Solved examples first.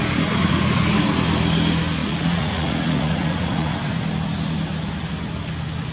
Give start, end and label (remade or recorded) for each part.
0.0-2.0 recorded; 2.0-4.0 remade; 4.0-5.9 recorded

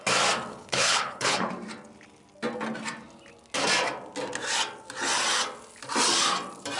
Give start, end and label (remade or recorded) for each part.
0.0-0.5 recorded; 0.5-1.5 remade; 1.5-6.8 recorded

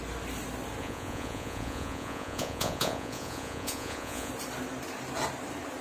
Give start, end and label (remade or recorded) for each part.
0.0-0.8 recorded; 0.8-4.3 remade; 4.3-5.8 recorded

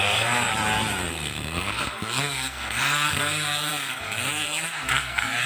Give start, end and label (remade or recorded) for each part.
0.0-0.5 remade; 0.5-1.1 recorded; 1.1-5.5 remade

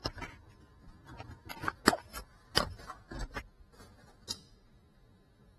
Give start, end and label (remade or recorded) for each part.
0.0-5.6 recorded

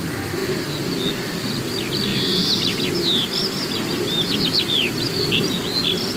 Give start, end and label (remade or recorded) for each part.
0.0-6.2 recorded